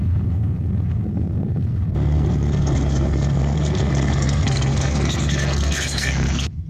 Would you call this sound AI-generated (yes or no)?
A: yes